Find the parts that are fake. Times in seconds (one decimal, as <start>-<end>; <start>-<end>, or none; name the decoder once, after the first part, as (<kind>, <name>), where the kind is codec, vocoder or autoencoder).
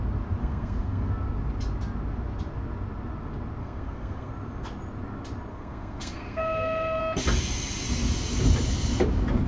0.4-1.1 (codec, SNAC); 3.6-4.3; 5.5-7.0